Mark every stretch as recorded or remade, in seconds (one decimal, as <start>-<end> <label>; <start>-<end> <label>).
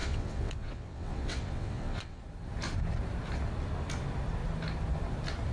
0.0-2.2 remade; 2.2-5.5 recorded